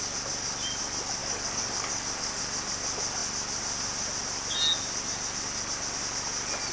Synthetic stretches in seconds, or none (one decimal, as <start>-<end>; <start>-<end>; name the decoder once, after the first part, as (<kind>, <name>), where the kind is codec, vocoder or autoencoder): 1.2-2.4 (codec, DAC)